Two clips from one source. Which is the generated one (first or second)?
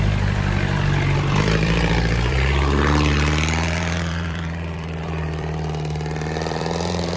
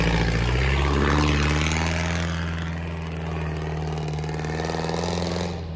first